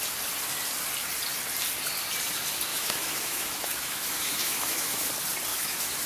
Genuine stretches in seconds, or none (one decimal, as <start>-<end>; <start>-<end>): 0.0-2.7; 5.1-5.5